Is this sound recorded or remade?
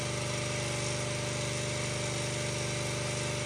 recorded